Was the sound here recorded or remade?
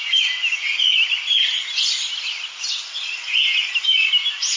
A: recorded